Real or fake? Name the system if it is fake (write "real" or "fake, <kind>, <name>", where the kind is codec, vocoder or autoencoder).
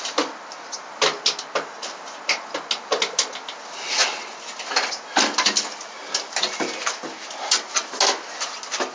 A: real